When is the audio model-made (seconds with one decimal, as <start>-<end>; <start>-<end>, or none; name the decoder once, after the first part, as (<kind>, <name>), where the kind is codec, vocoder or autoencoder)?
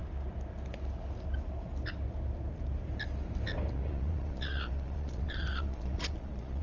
3.7-6.6 (vocoder, Vocos)